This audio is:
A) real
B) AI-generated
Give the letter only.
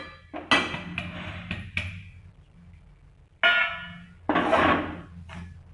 A